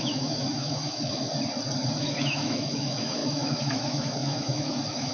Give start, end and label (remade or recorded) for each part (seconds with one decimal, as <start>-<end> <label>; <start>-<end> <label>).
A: 0.0-1.3 remade; 1.3-2.0 recorded; 2.0-5.1 remade